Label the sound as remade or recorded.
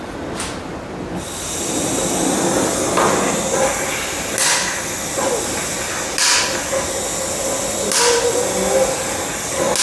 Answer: recorded